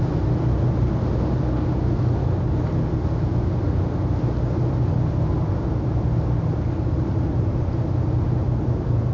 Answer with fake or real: real